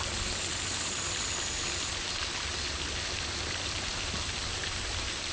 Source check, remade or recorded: recorded